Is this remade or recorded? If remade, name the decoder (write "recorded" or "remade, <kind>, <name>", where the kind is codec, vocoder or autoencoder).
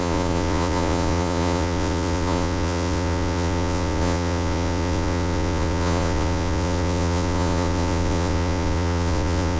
remade, vocoder, Vocos